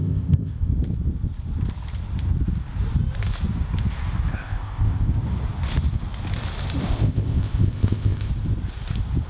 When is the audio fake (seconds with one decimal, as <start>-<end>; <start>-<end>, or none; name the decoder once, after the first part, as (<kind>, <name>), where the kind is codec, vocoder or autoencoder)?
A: 0.0-0.7 (codec, ZipCodec); 4.3-5.1; 6.8-8.3

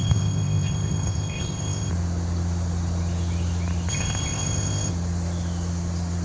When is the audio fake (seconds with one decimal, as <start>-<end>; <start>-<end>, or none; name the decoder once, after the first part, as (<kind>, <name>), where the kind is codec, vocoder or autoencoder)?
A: 0.0-1.9 (codec, ZipCodec); 3.9-4.9

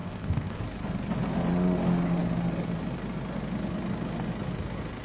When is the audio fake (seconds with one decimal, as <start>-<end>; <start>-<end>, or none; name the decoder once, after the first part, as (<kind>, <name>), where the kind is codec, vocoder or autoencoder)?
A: 0.0-0.6 (codec, ZipCodec)